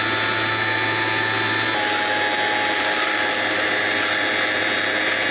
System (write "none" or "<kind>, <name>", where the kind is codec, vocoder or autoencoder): none